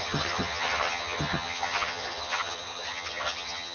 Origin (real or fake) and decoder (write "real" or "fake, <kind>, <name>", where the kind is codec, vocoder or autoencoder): fake, vocoder, HiFi-GAN